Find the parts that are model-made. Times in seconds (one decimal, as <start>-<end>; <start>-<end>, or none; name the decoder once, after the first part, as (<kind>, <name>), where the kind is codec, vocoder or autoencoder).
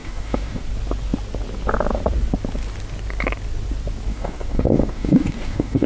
0.0-0.6 (codec, DAC); 4.1-5.9